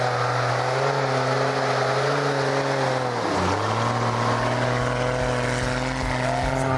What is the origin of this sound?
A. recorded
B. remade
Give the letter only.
A